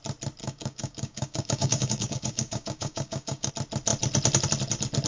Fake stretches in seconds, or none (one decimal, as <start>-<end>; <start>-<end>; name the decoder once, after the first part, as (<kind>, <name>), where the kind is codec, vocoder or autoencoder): 0.4-3.5 (codec, DAC)